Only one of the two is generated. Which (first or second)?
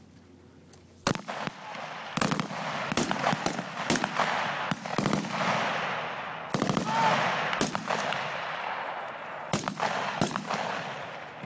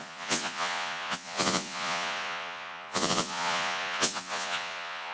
second